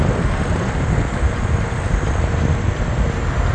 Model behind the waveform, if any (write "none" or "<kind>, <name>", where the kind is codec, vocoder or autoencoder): none